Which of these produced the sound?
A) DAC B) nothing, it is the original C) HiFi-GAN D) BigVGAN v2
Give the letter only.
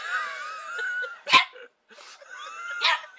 B